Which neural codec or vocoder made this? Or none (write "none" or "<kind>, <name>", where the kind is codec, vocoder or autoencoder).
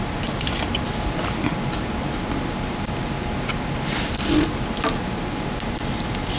none